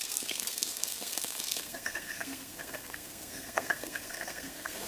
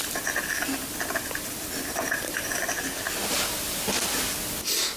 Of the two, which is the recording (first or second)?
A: second